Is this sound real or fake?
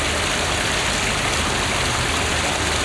real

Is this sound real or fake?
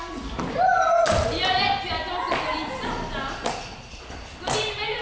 real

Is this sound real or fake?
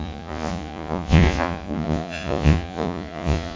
fake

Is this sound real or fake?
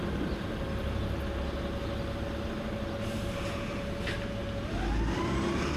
real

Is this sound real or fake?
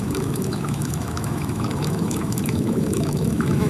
fake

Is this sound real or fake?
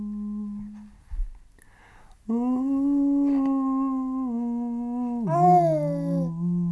real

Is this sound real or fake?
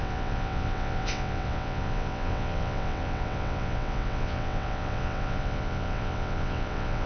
fake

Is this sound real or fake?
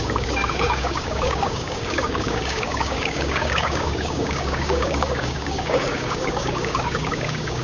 fake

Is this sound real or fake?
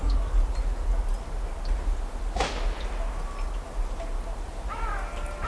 real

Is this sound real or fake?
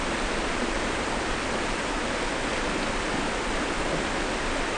real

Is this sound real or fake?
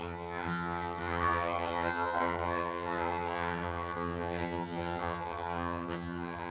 fake